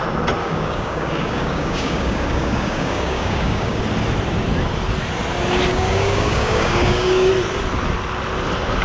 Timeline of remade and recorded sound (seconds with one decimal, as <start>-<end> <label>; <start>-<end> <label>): 0.0-0.4 recorded; 0.4-3.8 remade; 3.8-5.7 recorded; 5.7-7.3 remade; 7.3-8.8 recorded